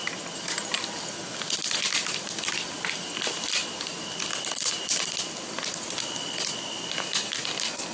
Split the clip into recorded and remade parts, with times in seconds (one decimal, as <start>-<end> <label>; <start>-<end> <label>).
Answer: 0.0-7.9 recorded